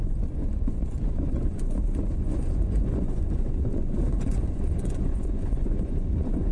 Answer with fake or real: fake